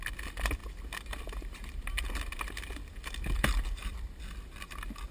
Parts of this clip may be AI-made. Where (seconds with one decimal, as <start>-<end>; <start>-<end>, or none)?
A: none